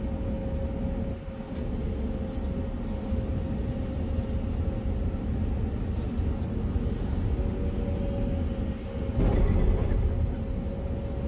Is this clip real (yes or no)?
yes